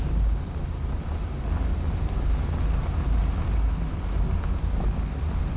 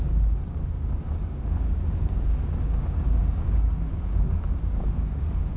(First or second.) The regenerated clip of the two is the second